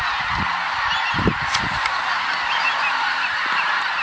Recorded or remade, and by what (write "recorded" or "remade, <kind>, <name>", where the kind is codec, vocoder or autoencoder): recorded